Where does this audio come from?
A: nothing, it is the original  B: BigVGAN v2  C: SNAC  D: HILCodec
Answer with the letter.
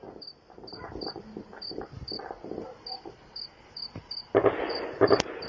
A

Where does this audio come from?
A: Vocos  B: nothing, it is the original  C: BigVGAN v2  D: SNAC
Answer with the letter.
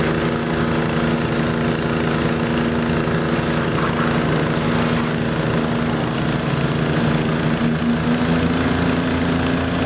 B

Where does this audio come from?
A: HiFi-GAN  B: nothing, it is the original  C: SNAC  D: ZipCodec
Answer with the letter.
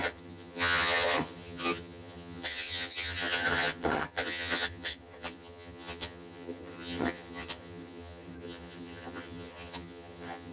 A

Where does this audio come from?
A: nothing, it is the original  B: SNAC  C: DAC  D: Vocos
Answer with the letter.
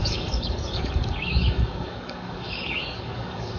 C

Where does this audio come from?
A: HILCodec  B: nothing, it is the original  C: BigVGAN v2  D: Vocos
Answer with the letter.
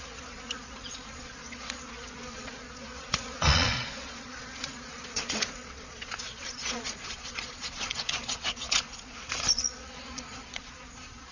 D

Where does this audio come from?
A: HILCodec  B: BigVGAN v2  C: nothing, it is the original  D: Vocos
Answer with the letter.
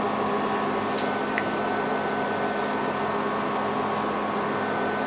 C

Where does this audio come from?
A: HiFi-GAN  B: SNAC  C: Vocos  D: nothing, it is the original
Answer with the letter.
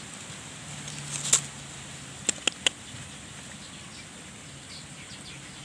D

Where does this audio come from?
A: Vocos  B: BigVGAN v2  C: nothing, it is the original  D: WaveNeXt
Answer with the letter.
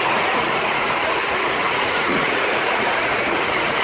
A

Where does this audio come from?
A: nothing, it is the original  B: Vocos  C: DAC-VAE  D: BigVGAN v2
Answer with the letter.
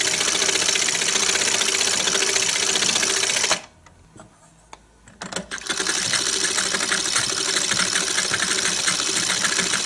A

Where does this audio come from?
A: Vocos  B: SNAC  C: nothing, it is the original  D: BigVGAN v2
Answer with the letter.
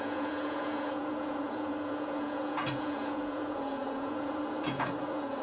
A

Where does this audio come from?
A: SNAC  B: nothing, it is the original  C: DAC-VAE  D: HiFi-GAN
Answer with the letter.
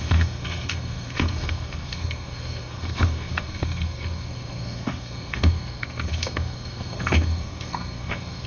A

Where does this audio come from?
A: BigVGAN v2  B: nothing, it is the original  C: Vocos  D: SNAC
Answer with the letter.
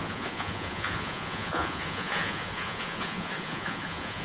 C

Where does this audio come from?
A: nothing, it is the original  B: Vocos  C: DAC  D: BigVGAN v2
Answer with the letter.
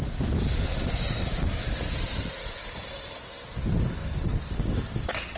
A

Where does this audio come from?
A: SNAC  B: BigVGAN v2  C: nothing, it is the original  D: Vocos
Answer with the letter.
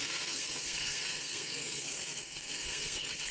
A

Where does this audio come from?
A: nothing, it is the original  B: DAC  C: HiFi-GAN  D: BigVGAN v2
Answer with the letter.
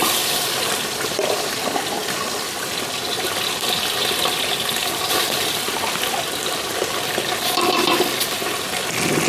A